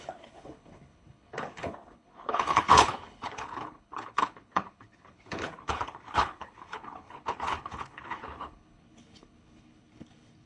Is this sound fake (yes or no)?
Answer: yes